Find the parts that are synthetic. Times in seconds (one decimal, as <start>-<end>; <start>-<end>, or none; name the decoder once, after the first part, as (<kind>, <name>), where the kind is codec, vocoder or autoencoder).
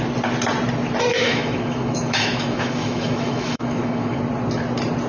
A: 1.1-4.2 (autoencoder, DAC-VAE)